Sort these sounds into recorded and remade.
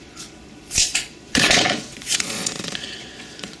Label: remade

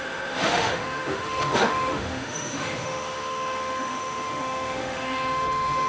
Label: remade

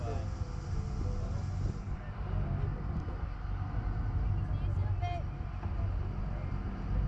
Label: recorded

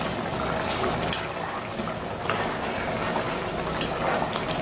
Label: recorded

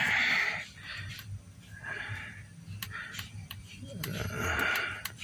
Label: recorded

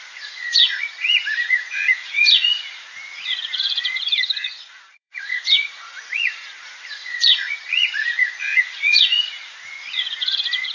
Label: remade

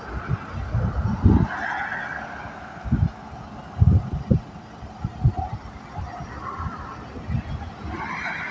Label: recorded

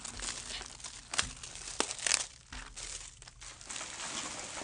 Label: recorded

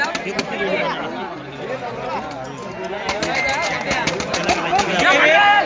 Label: recorded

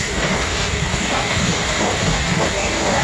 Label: remade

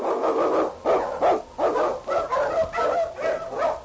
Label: recorded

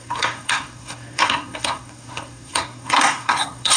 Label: remade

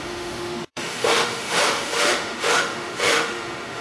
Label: remade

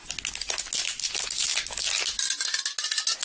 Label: recorded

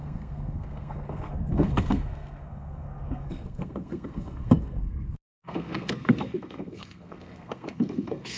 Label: remade